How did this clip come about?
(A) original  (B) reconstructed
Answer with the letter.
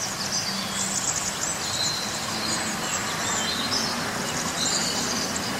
A